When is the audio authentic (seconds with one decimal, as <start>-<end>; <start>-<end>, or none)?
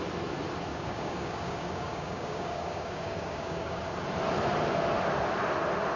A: 0.0-0.7; 3.8-6.0